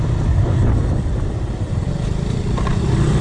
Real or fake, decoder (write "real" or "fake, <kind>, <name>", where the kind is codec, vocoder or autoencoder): real